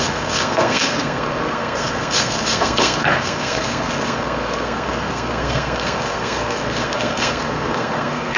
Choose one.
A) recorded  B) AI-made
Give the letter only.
B